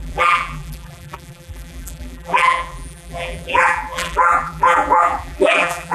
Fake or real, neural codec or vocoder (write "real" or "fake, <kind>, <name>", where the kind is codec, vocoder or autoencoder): fake, vocoder, BigVGAN v2